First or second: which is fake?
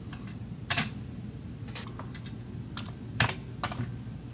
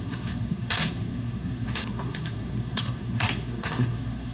second